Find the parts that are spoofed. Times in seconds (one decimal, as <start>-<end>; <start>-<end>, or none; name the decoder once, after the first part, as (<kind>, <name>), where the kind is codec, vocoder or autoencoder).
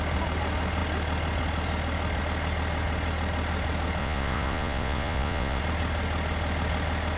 4.0-5.6 (vocoder, Vocos)